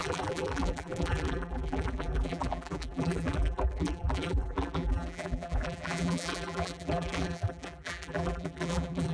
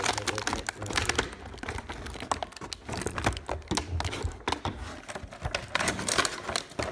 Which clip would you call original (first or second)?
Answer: second